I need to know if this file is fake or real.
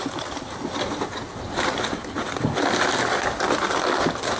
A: real